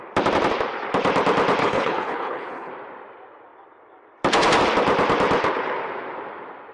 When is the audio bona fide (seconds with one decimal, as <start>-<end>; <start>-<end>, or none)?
0.0-1.6; 2.7-6.7